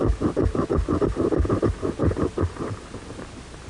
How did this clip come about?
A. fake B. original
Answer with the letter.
B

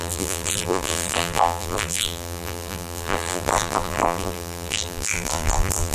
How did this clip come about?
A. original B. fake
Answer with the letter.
B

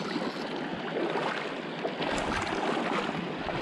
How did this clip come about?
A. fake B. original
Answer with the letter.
B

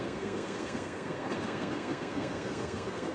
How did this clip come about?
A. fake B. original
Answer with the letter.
A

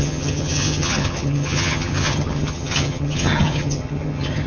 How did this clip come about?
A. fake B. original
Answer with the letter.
A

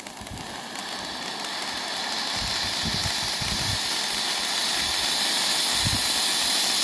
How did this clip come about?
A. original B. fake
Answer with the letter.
A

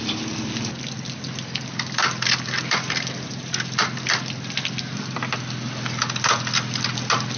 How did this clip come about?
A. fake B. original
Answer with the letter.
B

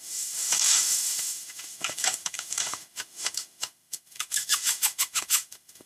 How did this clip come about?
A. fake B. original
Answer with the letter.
A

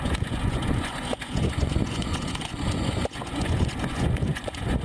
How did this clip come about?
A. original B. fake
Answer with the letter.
B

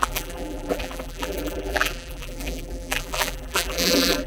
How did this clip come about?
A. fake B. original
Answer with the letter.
A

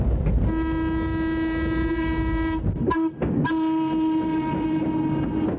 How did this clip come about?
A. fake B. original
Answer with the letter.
B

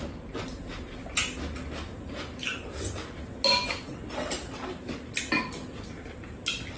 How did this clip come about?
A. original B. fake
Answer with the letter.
A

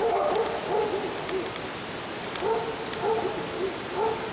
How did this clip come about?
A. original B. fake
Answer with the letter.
A